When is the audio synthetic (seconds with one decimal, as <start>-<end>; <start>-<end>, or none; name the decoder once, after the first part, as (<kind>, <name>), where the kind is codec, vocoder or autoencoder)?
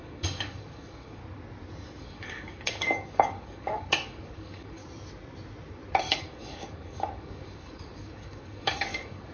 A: 0.0-1.2 (codec, DAC); 2.0-4.8; 6.0-9.3